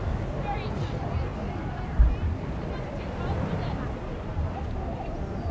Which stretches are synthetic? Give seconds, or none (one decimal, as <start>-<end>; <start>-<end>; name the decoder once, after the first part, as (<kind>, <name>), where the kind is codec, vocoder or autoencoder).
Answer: none